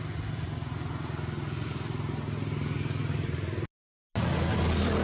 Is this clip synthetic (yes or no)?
no